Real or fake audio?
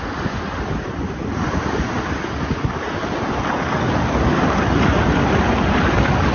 real